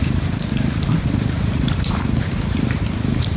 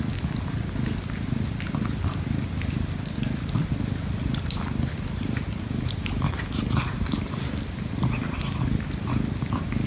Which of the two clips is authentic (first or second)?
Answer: second